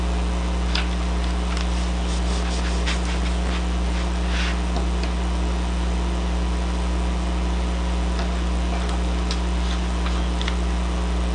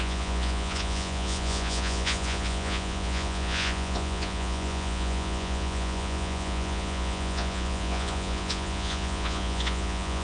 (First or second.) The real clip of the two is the first